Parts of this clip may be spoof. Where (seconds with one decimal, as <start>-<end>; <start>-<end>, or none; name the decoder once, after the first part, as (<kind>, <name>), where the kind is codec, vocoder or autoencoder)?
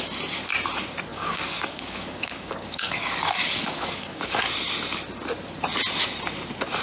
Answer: 1.1-4.4 (codec, DAC)